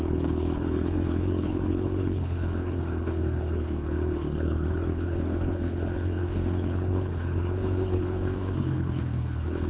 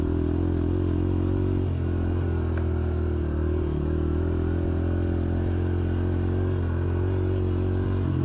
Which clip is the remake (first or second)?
first